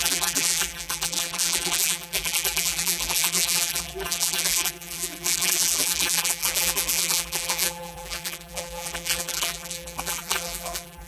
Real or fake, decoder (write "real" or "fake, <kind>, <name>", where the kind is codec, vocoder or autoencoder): fake, vocoder, BigVGAN v2